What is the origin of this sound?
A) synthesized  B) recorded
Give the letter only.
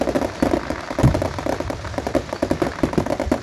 B